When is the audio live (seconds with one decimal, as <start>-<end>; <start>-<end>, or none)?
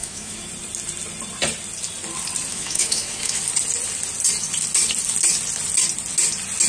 0.5-2.5; 3.4-6.7